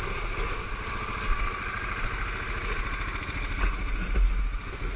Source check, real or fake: real